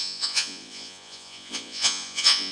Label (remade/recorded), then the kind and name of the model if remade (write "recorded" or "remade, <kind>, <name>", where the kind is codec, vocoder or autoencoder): remade, vocoder, Vocos